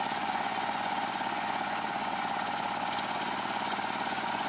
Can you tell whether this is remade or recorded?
remade